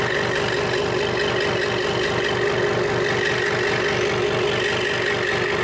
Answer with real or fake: real